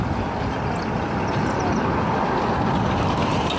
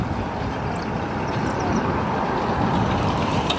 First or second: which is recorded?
first